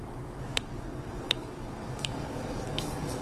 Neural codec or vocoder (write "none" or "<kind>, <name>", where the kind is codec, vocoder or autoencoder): codec, DAC